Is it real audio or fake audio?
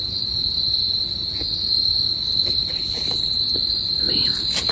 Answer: real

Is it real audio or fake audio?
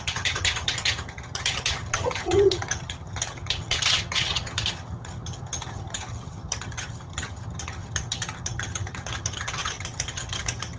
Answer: fake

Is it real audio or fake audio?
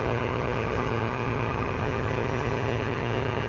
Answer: fake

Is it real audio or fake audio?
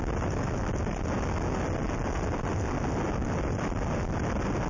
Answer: real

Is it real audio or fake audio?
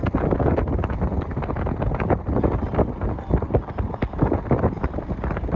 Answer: real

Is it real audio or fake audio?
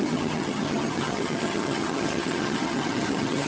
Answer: fake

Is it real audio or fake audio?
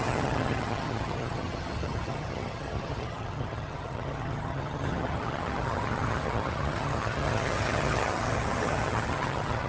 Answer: fake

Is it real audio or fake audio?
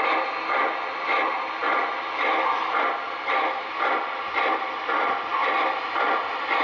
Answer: real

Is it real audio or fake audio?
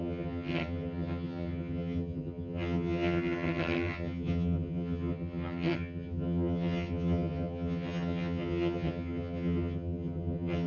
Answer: fake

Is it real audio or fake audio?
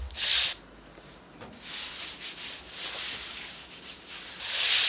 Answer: real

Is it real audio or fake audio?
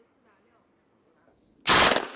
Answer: real